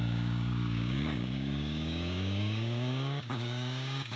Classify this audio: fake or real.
fake